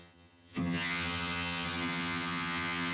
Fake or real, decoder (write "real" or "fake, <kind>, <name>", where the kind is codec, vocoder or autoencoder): fake, vocoder, HiFi-GAN